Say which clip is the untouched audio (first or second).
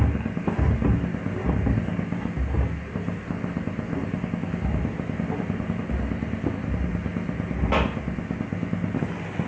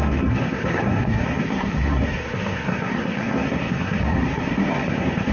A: first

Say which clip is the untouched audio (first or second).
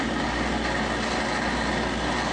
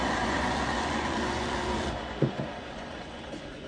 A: first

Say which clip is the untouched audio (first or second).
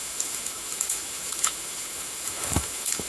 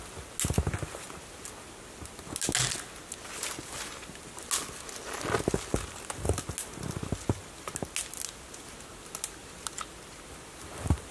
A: second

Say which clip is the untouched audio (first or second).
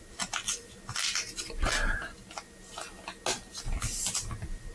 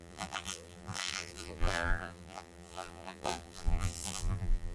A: first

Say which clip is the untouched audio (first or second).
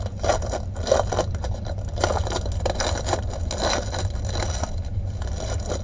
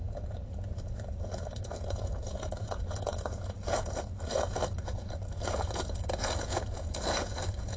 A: first